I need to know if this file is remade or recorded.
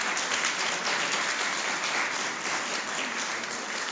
recorded